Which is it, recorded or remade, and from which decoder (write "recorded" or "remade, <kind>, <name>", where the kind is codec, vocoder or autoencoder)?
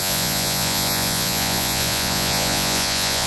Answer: remade, vocoder, Vocos